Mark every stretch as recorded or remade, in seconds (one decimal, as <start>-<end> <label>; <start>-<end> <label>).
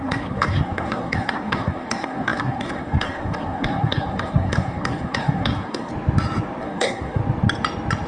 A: 0.0-5.9 remade; 5.9-6.6 recorded; 6.6-7.2 remade; 7.2-8.1 recorded